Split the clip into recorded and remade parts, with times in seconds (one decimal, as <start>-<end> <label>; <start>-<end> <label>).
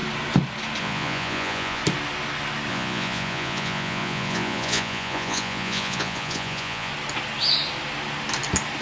0.0-0.8 recorded; 0.8-1.8 remade; 1.8-2.7 recorded; 2.7-6.9 remade; 6.9-8.8 recorded